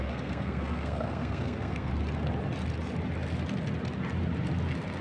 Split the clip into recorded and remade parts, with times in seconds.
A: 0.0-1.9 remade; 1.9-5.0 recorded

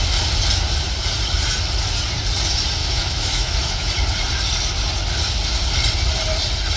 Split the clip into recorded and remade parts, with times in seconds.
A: 0.0-2.8 recorded; 2.8-3.9 remade; 3.9-6.8 recorded